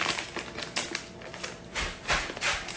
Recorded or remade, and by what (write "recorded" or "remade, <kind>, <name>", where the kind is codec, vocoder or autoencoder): recorded